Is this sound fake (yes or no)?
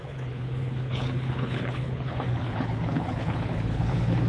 yes